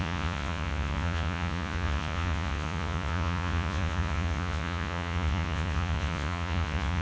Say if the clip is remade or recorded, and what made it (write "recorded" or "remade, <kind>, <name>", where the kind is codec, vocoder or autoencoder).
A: remade, vocoder, Vocos